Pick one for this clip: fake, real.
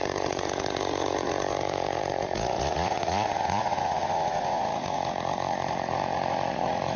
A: fake